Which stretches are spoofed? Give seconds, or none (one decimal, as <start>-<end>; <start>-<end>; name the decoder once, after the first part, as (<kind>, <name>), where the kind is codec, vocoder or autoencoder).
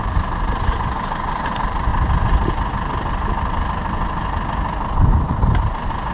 0.0-1.9 (vocoder, BigVGAN v2); 5.4-6.1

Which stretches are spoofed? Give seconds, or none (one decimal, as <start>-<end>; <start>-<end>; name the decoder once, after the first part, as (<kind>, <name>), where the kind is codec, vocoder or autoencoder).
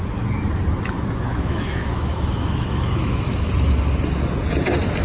1.3-3.5 (autoencoder, DAC-VAE)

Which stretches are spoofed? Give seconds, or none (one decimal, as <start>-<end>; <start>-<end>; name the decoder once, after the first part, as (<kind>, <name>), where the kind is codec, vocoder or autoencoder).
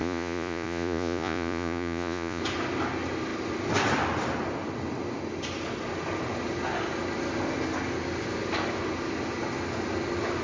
0.0-2.4 (vocoder, Vocos)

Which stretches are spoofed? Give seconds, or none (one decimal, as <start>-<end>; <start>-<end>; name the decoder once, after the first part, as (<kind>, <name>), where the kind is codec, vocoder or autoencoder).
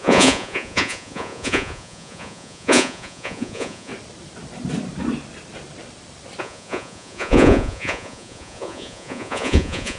0.0-3.9 (vocoder, Vocos); 6.4-10.0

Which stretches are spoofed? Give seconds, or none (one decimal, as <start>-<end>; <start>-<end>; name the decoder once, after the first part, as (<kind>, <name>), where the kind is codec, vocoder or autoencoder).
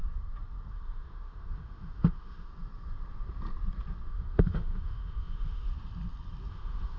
0.7-2.5 (autoencoder, DAC-VAE); 4.1-5.7; 6.5-7.0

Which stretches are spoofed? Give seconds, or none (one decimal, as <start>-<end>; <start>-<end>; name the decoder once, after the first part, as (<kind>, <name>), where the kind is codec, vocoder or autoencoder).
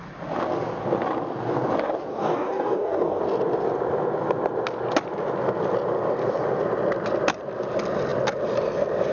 2.1-3.2 (codec, DAC)